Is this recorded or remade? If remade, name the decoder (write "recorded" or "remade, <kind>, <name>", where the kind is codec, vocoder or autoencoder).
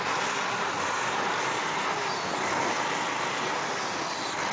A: recorded